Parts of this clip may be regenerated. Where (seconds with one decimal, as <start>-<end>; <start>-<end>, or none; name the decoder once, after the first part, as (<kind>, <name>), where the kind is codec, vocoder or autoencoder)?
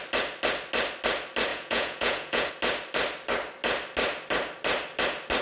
1.5-2.5 (vocoder, Vocos)